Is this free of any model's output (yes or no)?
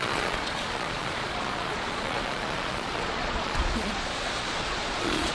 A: no